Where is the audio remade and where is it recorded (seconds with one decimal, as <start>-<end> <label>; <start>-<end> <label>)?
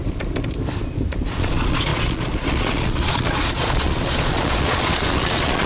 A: 0.0-1.3 recorded; 1.3-5.7 remade